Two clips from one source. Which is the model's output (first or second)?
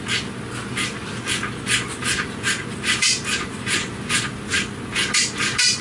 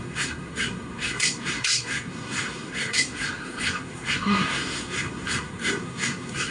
second